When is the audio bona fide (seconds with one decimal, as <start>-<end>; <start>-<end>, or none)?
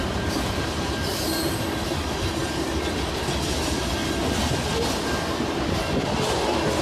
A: 2.4-3.6; 4.0-6.8